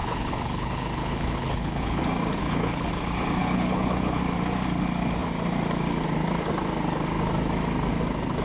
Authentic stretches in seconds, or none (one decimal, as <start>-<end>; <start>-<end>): 2.0-2.4; 2.9-3.4; 4.2-8.4

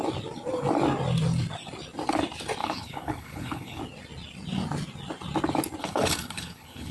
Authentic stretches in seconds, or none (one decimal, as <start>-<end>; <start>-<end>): 0.0-2.6; 3.8-5.8